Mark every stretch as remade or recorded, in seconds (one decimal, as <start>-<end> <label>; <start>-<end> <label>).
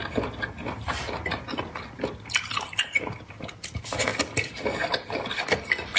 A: 0.0-6.0 recorded